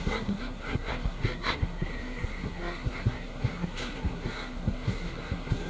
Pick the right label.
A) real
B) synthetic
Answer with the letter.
B